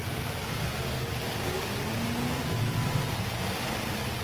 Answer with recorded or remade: recorded